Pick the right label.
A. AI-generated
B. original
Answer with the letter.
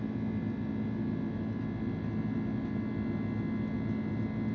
B